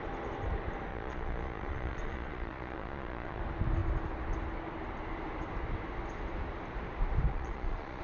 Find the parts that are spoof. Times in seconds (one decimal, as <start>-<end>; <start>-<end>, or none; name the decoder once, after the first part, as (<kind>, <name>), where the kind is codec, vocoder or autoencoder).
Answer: 0.9-3.4 (vocoder, Vocos); 7.3-8.0